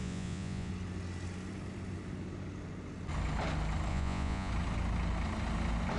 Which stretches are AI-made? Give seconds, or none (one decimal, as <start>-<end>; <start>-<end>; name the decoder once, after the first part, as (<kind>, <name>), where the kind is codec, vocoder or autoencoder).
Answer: 0.0-0.7 (vocoder, Vocos); 3.9-4.5